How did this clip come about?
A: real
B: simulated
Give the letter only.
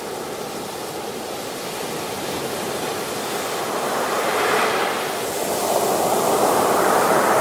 A